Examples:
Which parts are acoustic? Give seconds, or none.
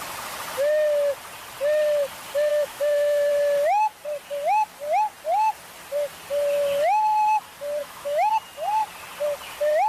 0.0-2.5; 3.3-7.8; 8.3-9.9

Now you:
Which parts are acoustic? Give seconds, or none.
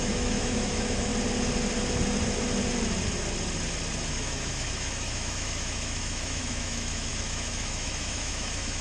1.1-4.1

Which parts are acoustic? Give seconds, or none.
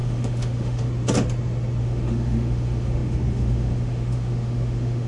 0.9-1.8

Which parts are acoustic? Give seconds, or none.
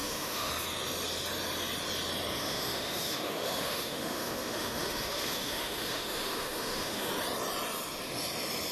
0.5-2.3; 7.1-8.7